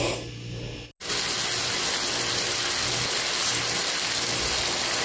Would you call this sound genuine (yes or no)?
yes